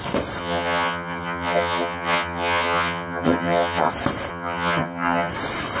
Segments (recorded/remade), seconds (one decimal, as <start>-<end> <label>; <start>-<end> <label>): 0.0-0.4 recorded; 0.4-3.9 remade; 3.9-4.3 recorded; 4.3-5.3 remade; 5.3-5.8 recorded